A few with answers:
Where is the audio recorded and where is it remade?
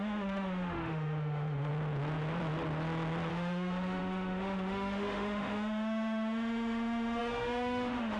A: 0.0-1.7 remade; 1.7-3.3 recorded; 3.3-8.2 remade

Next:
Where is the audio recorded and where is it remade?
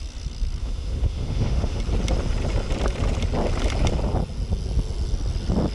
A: 0.0-0.6 recorded; 0.6-1.8 remade; 1.8-5.7 recorded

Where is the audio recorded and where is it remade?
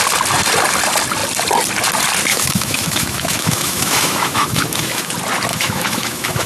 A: 0.0-2.3 recorded; 2.3-5.1 remade; 5.1-5.5 recorded; 5.5-6.5 remade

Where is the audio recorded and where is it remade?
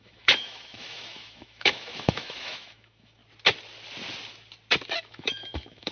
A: 0.0-3.2 remade; 3.2-5.0 recorded; 5.0-5.9 remade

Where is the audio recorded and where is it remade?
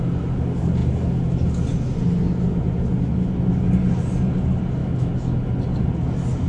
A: 0.0-4.8 recorded; 4.8-5.5 remade; 5.5-6.5 recorded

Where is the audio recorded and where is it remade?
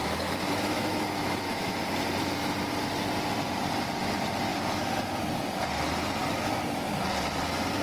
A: 0.0-1.7 remade; 1.7-7.8 recorded